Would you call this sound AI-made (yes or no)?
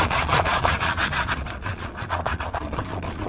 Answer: yes